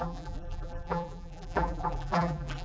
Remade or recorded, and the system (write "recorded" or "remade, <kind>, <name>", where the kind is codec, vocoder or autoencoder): remade, vocoder, BigVGAN v2